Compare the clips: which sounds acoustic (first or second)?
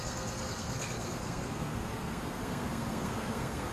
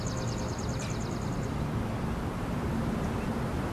second